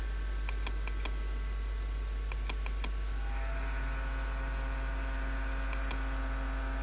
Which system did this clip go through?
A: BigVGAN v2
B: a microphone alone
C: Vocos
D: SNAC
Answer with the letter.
B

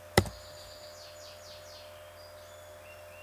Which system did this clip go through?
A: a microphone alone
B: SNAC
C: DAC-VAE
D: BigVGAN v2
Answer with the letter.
A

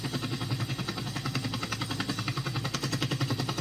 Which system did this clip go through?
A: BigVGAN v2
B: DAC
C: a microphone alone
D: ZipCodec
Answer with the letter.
C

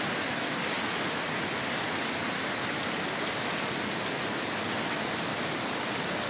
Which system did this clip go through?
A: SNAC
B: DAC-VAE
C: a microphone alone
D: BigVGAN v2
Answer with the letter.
C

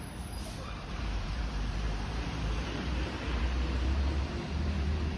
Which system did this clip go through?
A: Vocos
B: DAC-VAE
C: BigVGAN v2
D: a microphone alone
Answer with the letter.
C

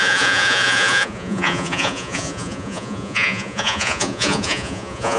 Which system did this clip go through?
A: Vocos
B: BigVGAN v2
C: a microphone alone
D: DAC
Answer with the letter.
A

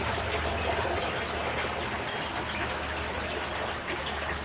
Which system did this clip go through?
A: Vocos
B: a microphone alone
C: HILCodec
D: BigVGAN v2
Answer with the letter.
B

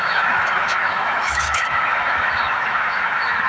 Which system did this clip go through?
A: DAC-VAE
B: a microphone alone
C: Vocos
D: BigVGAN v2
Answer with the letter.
A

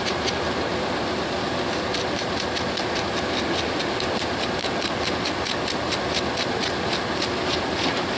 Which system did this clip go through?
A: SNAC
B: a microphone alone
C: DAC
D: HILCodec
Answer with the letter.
B